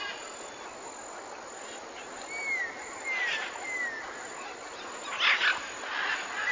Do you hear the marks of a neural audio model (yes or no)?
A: no